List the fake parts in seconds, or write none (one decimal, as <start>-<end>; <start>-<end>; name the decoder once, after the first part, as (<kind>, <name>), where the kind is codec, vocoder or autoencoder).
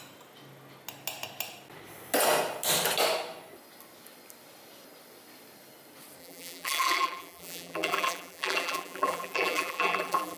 6.2-10.4 (vocoder, BigVGAN v2)